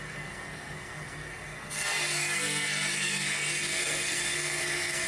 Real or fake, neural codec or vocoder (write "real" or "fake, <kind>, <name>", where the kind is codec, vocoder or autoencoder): fake, codec, SNAC